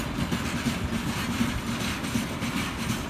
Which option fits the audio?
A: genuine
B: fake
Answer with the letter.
A